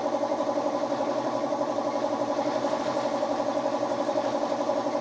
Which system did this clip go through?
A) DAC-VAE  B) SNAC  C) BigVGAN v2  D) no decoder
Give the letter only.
C